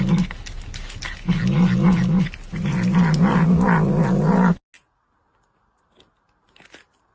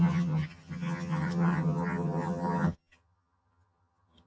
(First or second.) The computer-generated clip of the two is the second